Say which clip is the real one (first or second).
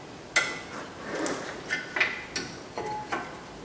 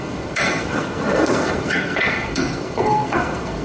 first